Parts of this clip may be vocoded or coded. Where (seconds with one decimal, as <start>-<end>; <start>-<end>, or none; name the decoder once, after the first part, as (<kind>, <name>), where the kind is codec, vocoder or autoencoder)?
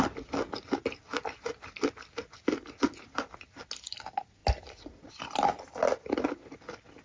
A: none